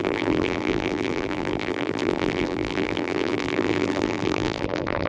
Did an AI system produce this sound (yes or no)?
yes